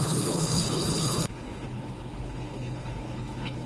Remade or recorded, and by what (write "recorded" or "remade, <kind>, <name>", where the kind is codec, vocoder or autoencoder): remade, codec, HILCodec